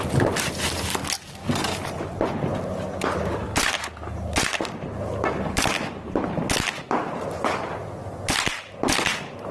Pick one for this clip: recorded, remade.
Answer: recorded